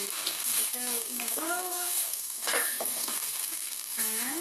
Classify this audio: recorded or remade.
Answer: remade